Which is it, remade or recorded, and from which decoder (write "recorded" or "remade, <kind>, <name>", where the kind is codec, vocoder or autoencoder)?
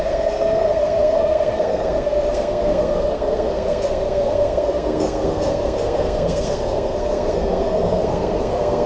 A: remade, codec, SNAC